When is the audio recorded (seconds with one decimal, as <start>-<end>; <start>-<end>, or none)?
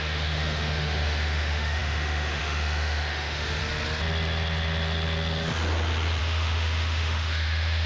3.6-6.2